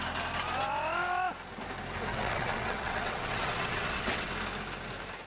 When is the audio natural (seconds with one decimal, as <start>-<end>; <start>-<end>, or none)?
0.0-2.1; 4.3-5.3